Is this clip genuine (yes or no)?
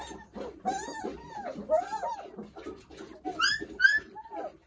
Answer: yes